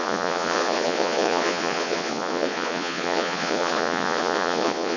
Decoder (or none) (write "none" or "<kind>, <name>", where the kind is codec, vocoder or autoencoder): vocoder, Vocos